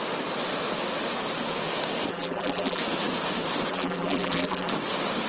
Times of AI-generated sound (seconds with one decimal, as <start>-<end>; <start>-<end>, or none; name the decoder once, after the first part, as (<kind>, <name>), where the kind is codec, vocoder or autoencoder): 2.1-2.8 (vocoder, BigVGAN v2); 3.7-4.7

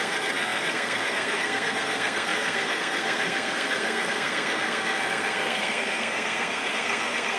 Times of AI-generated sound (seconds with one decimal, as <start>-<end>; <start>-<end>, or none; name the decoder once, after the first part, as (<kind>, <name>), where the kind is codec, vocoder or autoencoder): 0.0-7.4 (codec, SNAC)

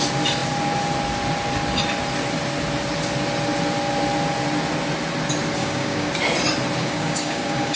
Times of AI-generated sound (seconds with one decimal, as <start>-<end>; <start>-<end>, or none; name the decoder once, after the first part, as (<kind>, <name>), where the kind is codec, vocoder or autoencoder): 5.6-6.1 (codec, DAC); 6.8-7.8

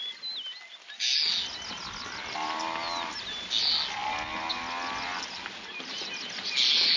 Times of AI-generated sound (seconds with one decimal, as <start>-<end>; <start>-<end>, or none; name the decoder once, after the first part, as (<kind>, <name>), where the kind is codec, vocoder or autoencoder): none

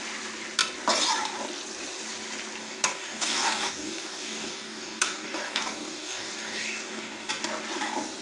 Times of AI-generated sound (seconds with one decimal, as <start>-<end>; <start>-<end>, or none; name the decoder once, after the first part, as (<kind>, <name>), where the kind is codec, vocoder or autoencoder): 2.6-7.3 (codec, DAC)

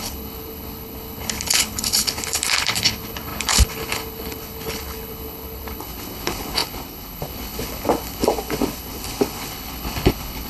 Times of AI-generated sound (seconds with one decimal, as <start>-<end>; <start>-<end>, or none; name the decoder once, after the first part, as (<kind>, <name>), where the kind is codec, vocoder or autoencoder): 0.0-10.5 (codec, HILCodec)